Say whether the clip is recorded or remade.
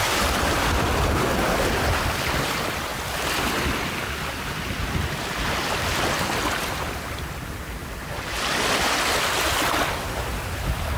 recorded